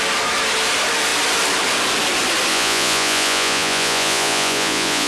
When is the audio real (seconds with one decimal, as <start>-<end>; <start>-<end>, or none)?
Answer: 0.0-2.5